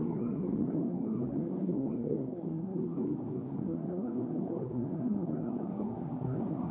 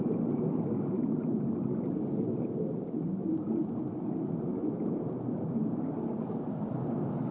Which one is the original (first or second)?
second